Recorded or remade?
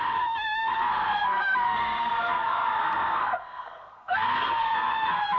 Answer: remade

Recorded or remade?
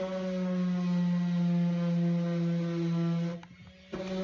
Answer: recorded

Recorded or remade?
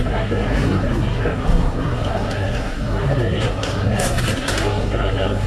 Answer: remade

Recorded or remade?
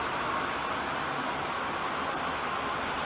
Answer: recorded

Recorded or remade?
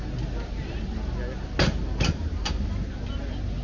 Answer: recorded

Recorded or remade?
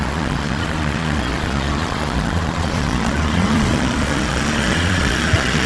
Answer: remade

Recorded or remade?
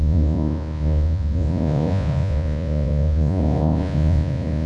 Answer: remade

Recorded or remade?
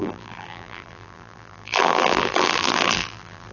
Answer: remade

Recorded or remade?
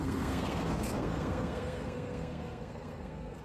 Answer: remade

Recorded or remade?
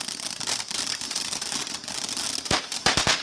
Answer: recorded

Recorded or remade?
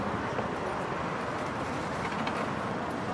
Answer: recorded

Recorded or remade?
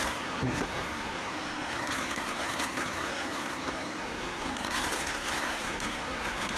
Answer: remade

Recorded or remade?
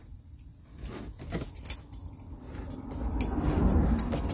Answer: recorded